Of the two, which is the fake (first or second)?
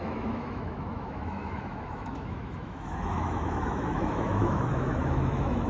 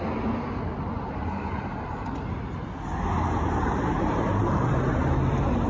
first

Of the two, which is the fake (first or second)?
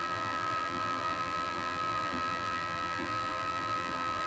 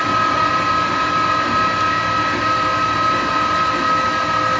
first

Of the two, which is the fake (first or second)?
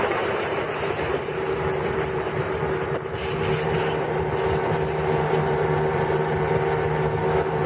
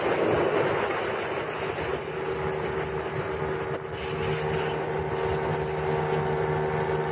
first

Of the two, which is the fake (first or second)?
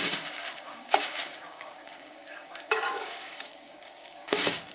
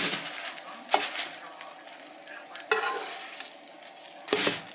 first